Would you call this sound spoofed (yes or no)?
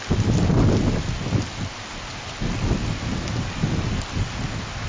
no